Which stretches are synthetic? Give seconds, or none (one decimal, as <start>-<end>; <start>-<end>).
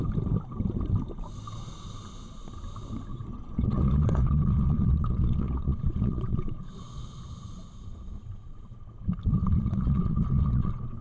3.1-7.2; 9.4-11.0